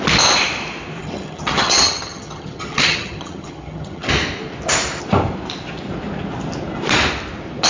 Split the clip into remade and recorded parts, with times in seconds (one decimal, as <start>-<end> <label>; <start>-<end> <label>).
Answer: 0.0-1.0 recorded; 1.0-4.1 remade; 4.1-7.7 recorded